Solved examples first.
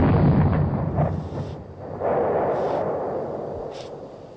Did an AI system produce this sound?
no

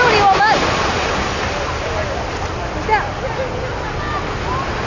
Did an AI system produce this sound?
no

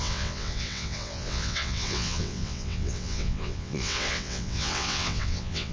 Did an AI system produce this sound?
yes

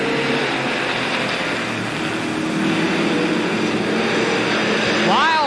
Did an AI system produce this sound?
no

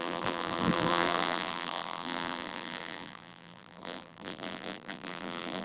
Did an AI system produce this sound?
yes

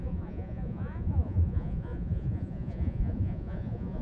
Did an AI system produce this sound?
yes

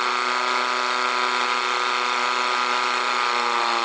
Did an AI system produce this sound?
no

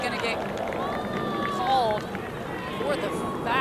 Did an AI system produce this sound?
no